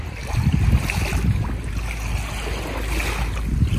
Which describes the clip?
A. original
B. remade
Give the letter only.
A